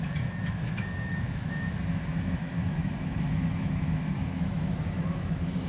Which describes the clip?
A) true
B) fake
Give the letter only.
B